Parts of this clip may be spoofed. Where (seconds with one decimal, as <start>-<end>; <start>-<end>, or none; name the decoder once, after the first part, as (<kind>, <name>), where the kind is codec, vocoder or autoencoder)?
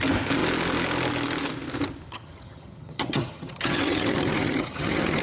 2.1-5.2 (vocoder, HiFi-GAN)